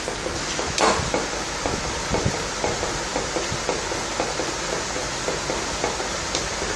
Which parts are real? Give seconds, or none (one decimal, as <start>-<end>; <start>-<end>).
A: 0.0-6.8